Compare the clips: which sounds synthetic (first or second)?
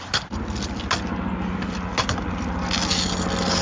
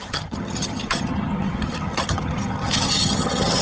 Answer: second